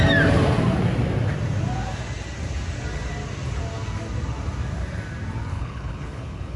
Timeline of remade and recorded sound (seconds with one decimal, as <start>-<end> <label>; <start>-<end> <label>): 0.0-5.5 recorded; 5.5-6.6 remade

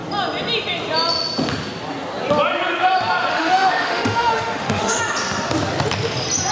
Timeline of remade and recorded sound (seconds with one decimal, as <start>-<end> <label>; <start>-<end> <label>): 0.0-3.3 recorded; 3.3-5.0 remade; 5.0-6.5 recorded

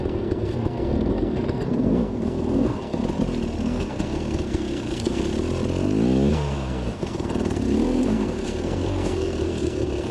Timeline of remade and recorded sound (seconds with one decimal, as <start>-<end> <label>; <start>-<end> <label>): 0.0-3.0 remade; 3.0-3.6 recorded; 3.6-5.3 remade; 5.3-6.3 recorded; 6.3-10.1 remade

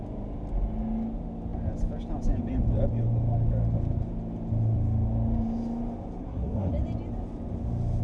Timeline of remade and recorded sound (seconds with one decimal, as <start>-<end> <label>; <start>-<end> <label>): 0.0-6.2 recorded; 6.2-6.7 remade; 6.7-8.0 recorded

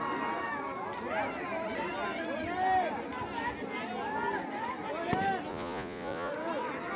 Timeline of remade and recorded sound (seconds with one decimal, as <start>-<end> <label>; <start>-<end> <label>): 0.0-5.5 recorded; 5.5-6.3 remade; 6.3-7.0 recorded